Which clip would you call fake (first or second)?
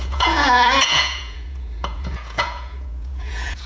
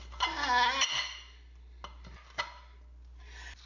first